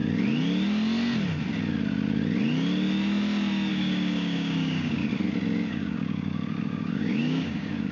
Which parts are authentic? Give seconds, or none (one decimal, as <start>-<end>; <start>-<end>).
0.0-3.7; 5.0-5.7